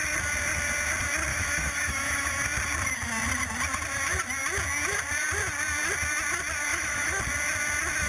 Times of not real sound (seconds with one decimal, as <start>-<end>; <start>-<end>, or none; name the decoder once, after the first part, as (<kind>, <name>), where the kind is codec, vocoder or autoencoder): 1.3-2.3 (autoencoder, DAC-VAE); 6.7-7.2